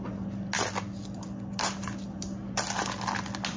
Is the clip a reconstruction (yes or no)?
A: no